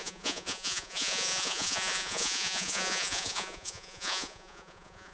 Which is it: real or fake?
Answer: fake